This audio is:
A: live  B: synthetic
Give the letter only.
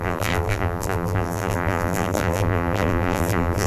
B